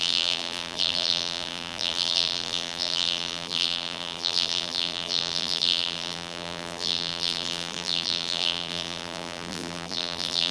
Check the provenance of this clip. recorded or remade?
remade